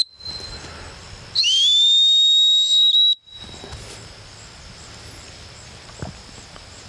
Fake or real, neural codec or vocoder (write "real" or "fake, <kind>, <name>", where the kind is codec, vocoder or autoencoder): real